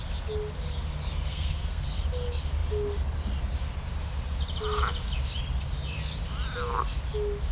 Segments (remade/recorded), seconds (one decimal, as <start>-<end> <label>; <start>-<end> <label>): 0.0-1.3 recorded; 1.3-1.8 remade; 1.8-7.5 recorded